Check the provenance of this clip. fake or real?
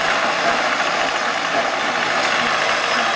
real